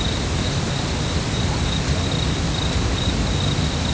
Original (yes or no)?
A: yes